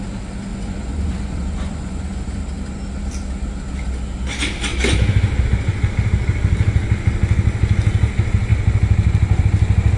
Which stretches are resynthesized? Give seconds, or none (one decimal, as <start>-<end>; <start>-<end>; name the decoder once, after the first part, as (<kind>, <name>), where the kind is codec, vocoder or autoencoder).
0.5-2.4 (vocoder, Vocos)